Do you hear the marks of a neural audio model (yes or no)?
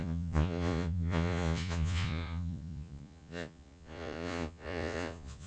yes